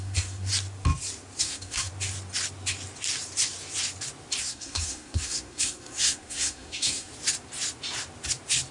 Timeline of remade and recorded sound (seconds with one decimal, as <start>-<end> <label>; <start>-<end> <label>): 0.0-0.5 remade; 0.5-1.4 recorded; 1.4-1.9 remade; 1.9-4.4 recorded; 4.4-7.1 remade; 7.1-8.7 recorded